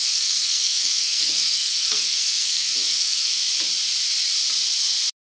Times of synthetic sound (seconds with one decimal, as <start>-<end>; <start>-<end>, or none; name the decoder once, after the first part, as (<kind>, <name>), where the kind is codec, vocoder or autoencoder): 0.0-3.4 (codec, SNAC)